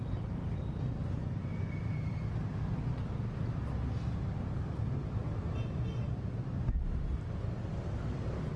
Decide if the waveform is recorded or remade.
recorded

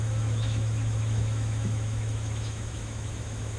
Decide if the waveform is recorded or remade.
remade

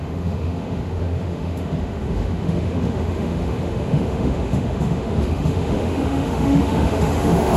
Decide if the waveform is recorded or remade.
remade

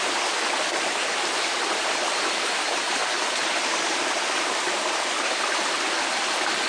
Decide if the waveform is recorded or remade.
recorded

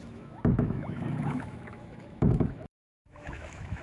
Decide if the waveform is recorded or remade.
remade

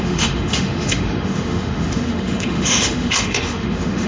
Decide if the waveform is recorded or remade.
remade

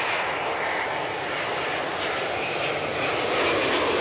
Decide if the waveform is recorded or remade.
recorded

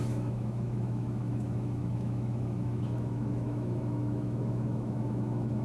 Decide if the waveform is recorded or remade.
remade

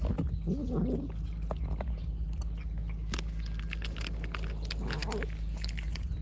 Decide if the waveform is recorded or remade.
recorded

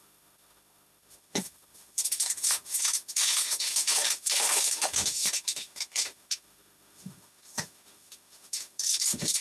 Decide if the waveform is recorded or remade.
remade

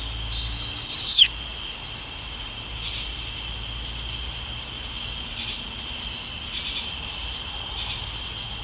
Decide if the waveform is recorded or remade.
recorded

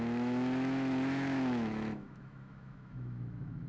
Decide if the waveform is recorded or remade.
remade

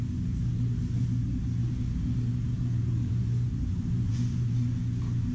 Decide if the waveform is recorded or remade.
recorded